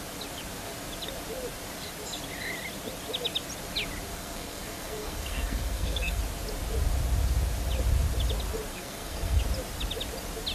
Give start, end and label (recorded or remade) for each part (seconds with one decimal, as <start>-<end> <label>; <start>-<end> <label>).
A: 0.0-4.1 recorded; 4.1-6.2 remade; 6.2-8.7 recorded; 8.7-9.4 remade; 9.4-10.5 recorded